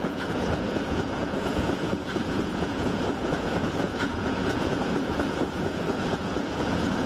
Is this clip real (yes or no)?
no